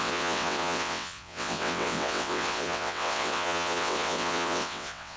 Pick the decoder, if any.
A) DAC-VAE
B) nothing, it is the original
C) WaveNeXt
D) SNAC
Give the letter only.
C